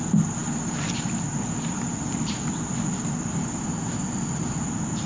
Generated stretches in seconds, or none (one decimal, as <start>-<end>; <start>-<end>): none